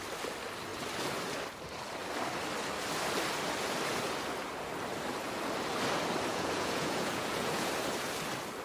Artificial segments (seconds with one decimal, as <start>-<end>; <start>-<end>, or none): 6.3-7.7